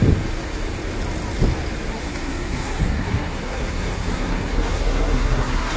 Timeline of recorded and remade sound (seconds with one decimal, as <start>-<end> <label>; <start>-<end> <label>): 0.0-2.0 recorded; 2.0-5.8 remade